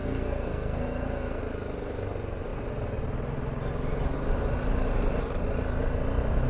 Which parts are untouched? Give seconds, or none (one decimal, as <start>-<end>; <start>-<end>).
1.4-6.5